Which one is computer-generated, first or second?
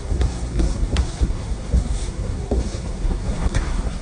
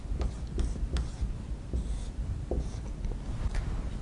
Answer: first